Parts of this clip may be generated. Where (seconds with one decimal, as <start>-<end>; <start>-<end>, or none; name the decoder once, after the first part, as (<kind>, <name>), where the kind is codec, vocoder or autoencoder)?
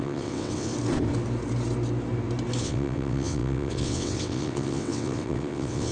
0.0-0.7 (vocoder, WaveNeXt); 2.6-5.9